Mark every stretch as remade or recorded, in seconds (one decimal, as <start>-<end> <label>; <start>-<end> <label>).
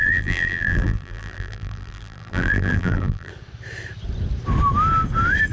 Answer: 0.0-3.3 remade; 3.3-5.5 recorded